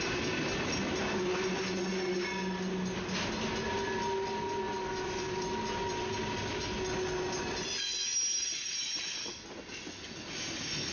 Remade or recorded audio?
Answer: recorded